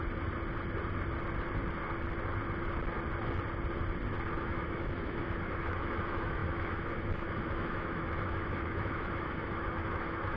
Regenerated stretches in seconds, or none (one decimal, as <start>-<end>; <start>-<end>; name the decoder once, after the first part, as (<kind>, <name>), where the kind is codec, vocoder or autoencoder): 4.4-10.4 (autoencoder, DAC-VAE)